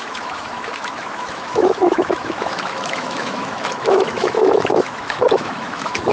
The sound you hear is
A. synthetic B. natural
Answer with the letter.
A